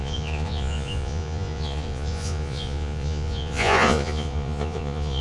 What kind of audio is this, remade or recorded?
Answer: remade